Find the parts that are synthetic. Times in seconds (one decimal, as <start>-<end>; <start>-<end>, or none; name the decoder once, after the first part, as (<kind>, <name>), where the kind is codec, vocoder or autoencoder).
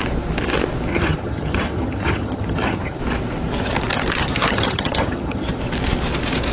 0.9-3.0 (vocoder, HiFi-GAN); 4.2-5.6